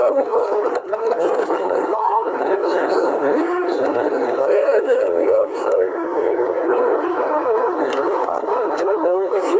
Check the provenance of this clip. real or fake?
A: fake